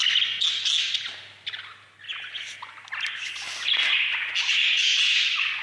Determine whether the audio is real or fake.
real